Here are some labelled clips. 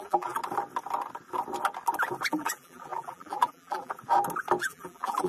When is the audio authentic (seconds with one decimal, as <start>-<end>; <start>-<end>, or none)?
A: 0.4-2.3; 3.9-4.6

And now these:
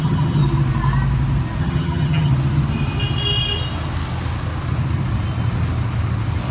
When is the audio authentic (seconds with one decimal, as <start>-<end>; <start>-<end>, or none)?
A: 0.4-1.6; 2.3-6.5

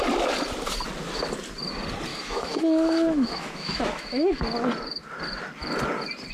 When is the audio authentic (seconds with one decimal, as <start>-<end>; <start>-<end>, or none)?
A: 0.0-2.1; 4.4-6.3

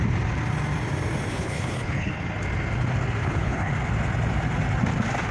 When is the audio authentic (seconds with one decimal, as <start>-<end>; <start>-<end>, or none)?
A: 0.0-1.3; 2.1-3.2; 3.7-5.3